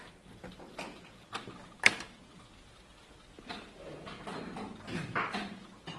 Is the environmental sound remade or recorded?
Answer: remade